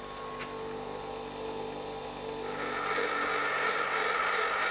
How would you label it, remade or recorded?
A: recorded